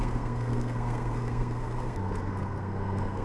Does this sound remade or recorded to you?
remade